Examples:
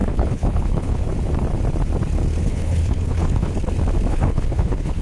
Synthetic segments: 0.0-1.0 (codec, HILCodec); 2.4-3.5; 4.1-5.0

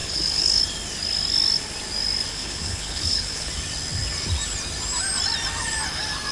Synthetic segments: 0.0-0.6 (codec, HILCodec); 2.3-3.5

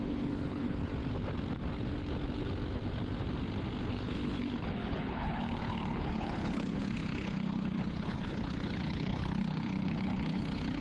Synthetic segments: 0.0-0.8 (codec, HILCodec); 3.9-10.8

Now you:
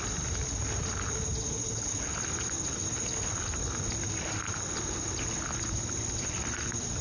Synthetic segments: 1.6-2.2 (codec, HILCodec)

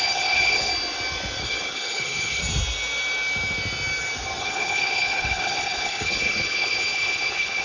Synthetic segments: 0.0-0.7 (codec, HILCodec); 1.4-2.4; 4.4-7.6

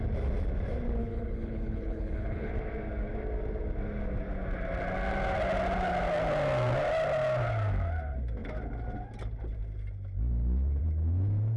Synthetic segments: 1.0-2.5 (codec, HILCodec)